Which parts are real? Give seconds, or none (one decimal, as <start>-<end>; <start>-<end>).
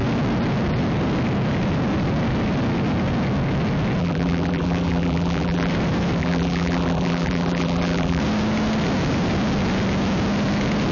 0.0-4.0; 5.7-6.2; 8.2-10.9